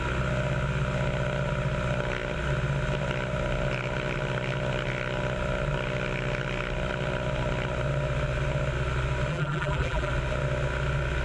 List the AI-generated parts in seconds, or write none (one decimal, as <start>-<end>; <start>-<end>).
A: 9.3-10.1